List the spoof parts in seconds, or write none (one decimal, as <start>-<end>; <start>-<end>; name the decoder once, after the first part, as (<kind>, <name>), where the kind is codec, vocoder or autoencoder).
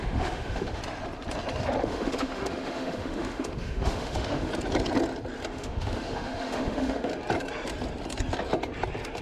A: 0.0-0.8 (autoencoder, DAC-VAE); 1.8-4.5; 5.5-7.1